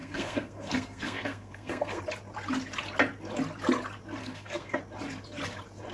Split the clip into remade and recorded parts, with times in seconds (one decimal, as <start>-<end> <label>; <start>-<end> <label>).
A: 0.0-2.0 remade; 2.0-4.2 recorded; 4.2-4.8 remade; 4.8-5.9 recorded